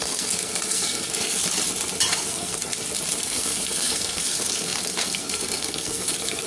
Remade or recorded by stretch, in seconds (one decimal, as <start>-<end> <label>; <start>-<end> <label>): 0.0-1.4 remade; 1.4-2.1 recorded; 2.1-2.7 remade; 2.7-3.2 recorded; 3.2-6.5 remade